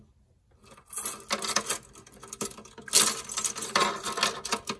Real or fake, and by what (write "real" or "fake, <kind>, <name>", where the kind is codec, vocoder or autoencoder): real